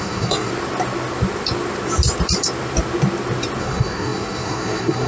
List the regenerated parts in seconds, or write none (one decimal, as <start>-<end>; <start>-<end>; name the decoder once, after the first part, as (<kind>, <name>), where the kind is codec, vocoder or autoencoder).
0.0-0.5 (codec, SNAC); 3.6-5.1